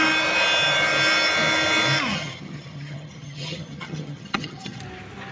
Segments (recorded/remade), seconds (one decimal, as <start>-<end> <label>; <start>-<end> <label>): 0.0-2.1 recorded; 2.1-4.8 remade; 4.8-5.3 recorded